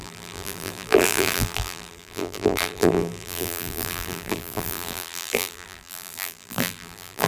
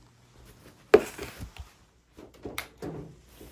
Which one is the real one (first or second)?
second